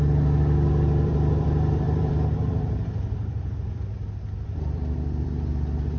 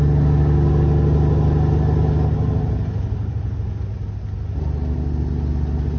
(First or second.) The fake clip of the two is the first